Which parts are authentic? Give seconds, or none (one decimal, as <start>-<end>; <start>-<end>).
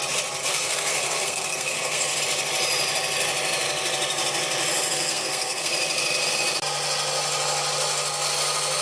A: 0.0-0.4; 2.2-4.9; 5.7-8.8